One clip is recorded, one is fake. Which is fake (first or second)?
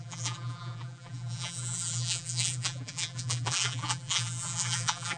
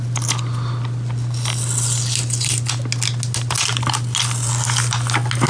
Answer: first